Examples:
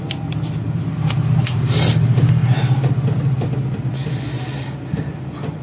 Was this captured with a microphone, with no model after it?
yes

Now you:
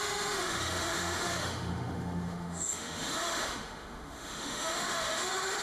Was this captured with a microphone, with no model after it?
no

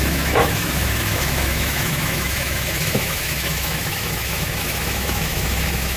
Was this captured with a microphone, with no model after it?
no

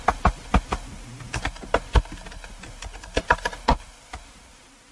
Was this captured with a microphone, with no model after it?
yes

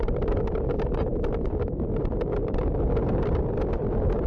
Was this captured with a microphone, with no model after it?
yes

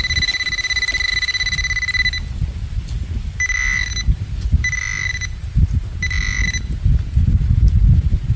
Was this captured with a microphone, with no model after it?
yes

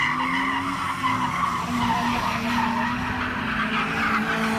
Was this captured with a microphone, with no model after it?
yes